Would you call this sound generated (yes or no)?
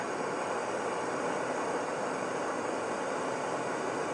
no